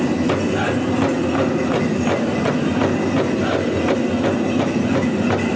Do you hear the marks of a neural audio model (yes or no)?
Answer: no